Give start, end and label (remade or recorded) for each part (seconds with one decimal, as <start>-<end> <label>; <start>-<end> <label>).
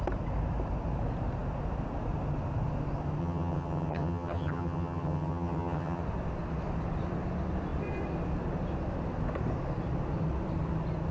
0.0-3.2 recorded; 3.2-6.0 remade; 6.0-11.1 recorded